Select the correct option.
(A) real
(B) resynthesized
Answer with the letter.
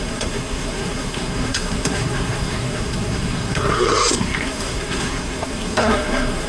B